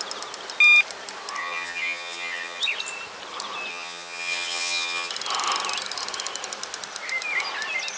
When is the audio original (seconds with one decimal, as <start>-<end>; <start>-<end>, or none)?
0.0-1.4; 2.6-3.7; 5.1-8.0